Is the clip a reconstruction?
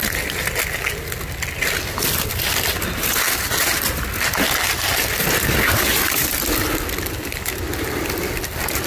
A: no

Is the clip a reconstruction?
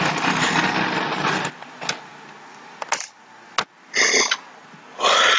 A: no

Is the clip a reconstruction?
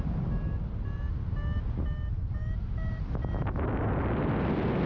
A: no